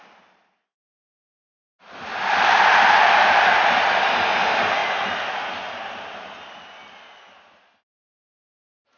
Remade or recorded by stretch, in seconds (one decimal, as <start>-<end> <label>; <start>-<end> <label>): 0.0-4.8 recorded; 4.8-5.6 remade; 5.6-9.0 recorded